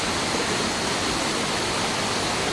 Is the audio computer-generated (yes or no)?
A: no